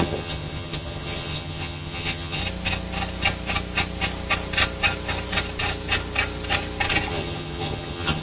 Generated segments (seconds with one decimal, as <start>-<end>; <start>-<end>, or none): 0.0-2.4; 7.1-8.2